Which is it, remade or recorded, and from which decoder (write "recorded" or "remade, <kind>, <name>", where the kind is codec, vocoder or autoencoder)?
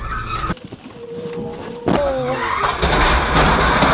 recorded